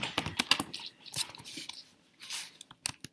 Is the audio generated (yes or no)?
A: no